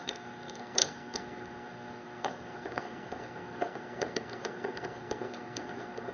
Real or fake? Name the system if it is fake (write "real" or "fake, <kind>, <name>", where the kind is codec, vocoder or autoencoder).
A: fake, codec, SNAC